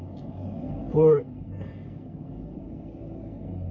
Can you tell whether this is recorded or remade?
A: remade